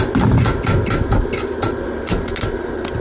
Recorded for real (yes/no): yes